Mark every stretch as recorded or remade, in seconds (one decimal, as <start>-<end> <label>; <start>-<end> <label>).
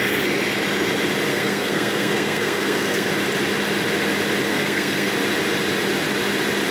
0.0-1.3 recorded; 1.3-3.1 remade; 3.1-4.5 recorded; 4.5-5.1 remade; 5.1-6.7 recorded